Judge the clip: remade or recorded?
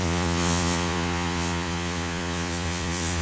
remade